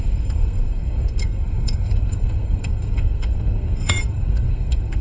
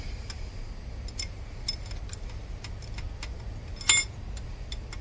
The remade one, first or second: first